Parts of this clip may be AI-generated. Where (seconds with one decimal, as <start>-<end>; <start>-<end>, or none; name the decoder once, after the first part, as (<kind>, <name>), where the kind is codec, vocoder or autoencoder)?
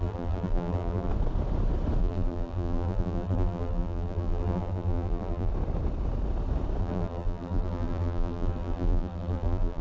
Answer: 0.0-1.1 (vocoder, BigVGAN v2); 2.0-5.5; 6.8-9.8